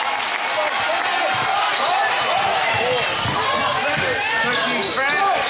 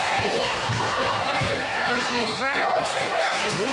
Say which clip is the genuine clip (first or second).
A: first